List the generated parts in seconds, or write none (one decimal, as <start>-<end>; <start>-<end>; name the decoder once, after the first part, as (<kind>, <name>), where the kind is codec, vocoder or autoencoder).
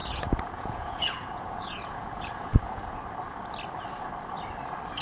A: 0.0-3.0 (vocoder, Vocos)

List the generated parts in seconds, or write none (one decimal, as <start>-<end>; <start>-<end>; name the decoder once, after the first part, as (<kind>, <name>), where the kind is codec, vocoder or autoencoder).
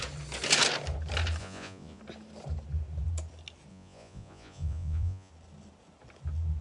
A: 1.4-2.0 (vocoder, Vocos); 3.7-5.3